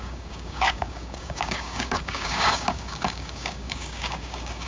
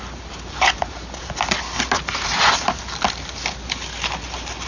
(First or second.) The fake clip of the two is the first